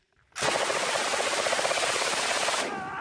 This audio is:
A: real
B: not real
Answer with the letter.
A